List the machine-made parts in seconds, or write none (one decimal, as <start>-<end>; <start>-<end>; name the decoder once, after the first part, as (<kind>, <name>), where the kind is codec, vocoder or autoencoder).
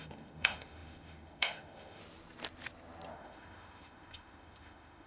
0.0-2.0 (autoencoder, DAC-VAE); 3.1-5.1